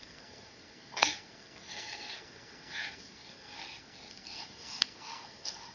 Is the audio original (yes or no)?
no